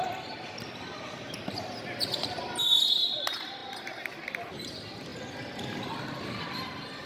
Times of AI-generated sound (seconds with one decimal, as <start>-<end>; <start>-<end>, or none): none